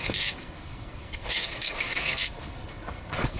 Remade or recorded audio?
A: remade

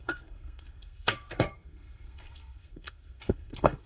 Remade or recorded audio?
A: remade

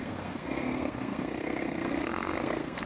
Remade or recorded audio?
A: remade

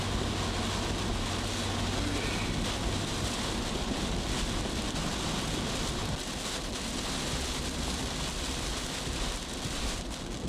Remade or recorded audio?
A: recorded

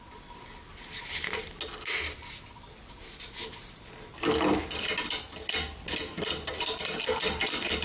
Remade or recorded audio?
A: recorded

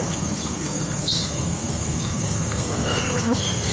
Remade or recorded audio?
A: remade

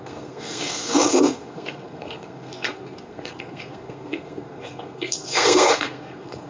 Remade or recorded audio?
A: remade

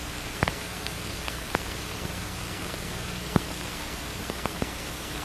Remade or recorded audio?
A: remade